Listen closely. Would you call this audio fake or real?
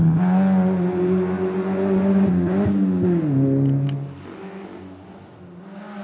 real